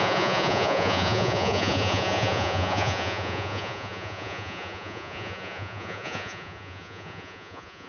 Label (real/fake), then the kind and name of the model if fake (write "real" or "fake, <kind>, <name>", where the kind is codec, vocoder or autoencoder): fake, vocoder, Vocos